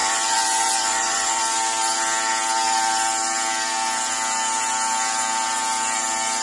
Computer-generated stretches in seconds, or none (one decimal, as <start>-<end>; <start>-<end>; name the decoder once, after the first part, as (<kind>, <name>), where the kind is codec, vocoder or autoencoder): 0.0-1.4 (vocoder, Vocos)

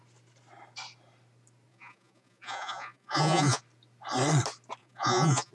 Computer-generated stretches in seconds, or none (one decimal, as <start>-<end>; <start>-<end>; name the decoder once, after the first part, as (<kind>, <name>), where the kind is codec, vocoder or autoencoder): 1.7-3.6 (vocoder, Vocos); 4.8-5.5